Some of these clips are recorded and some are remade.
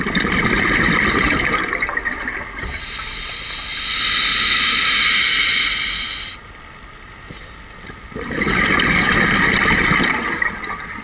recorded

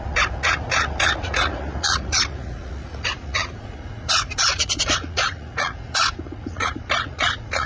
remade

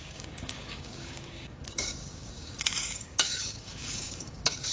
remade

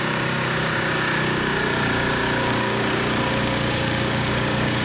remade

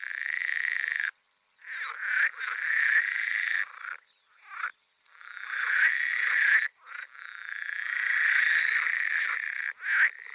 recorded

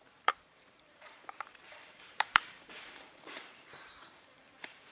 remade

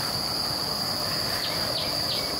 recorded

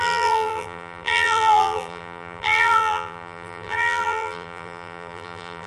remade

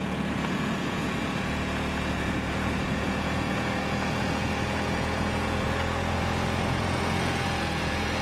remade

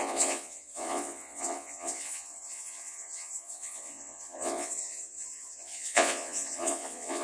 remade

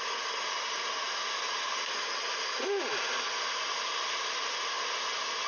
recorded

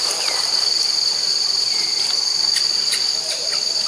recorded